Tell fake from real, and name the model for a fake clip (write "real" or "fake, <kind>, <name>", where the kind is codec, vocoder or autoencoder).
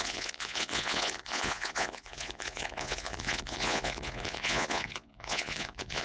fake, vocoder, Vocos